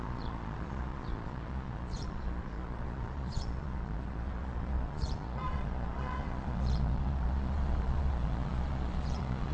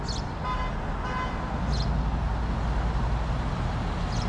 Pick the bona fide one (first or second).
second